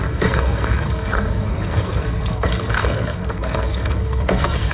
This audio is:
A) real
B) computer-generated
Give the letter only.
B